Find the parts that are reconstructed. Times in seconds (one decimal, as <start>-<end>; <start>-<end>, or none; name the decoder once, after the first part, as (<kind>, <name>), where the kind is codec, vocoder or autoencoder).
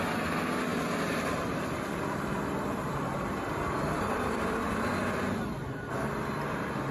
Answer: 0.7-4.8 (vocoder, BigVGAN v2)